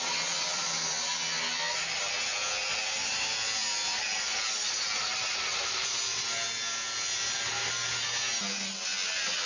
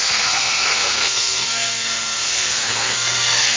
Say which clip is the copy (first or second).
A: second